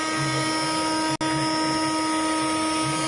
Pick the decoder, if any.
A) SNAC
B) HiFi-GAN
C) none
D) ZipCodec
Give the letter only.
C